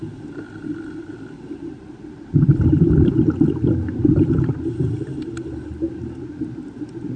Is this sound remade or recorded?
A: remade